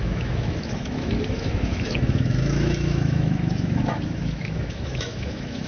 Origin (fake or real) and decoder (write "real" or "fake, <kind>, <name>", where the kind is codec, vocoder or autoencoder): fake, autoencoder, DAC-VAE